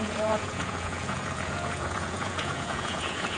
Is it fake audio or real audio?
fake